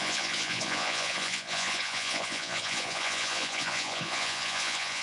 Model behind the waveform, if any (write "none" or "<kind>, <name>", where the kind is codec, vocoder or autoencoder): vocoder, Vocos